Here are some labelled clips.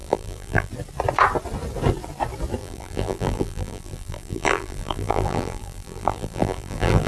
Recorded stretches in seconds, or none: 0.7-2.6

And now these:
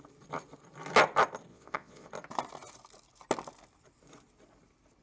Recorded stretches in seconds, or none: 0.0-1.5; 2.1-5.0

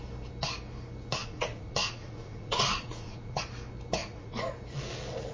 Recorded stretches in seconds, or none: 0.0-1.2; 3.4-4.0; 4.5-5.3

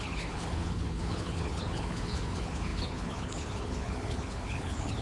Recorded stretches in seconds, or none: none

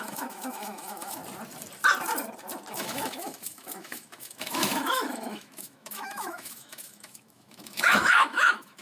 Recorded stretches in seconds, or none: 1.2-2.7